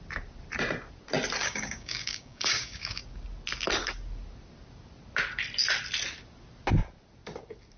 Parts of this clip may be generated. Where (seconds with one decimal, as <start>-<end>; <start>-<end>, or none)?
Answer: 1.4-3.0